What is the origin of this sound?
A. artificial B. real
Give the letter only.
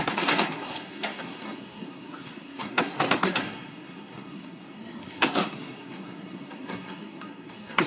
A